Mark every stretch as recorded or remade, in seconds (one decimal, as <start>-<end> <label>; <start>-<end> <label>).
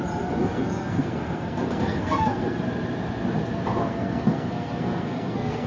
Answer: 0.0-0.4 recorded; 0.4-2.6 remade; 2.6-3.8 recorded; 3.8-5.7 remade